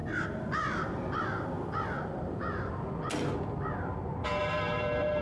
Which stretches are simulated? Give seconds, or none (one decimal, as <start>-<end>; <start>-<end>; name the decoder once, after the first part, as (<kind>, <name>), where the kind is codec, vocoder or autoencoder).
0.0-2.7 (vocoder, BigVGAN v2); 4.4-5.2